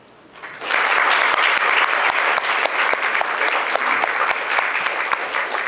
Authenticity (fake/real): real